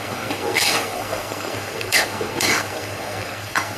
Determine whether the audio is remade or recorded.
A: remade